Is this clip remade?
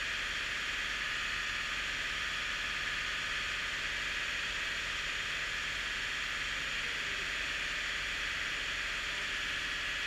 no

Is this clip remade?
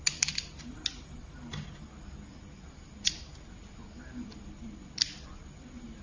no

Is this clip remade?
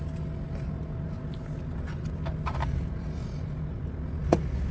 no